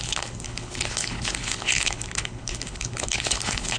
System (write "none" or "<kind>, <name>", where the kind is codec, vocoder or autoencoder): codec, HILCodec